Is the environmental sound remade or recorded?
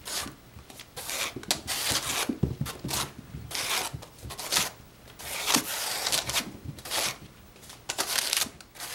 recorded